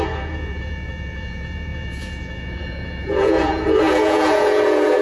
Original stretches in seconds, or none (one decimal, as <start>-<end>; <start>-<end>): none